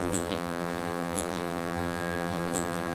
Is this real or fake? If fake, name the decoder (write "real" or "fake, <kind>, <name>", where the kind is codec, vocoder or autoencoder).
fake, vocoder, BigVGAN v2